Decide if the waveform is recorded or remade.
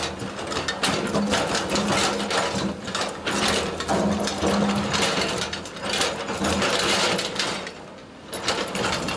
recorded